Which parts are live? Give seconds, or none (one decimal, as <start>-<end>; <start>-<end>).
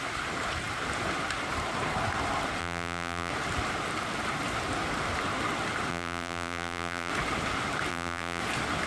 0.0-2.6; 3.3-5.9; 7.1-7.9; 8.4-8.9